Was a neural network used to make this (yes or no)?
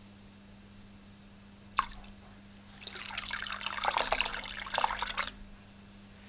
no